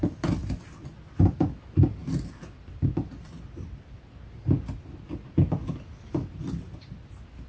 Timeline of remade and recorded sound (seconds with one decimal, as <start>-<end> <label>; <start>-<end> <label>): 0.0-7.5 recorded